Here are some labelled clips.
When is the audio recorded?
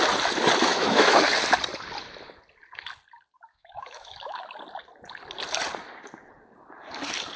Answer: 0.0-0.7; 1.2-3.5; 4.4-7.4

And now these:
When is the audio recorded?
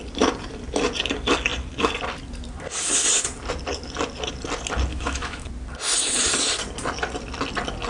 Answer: 0.0-4.9; 5.5-7.9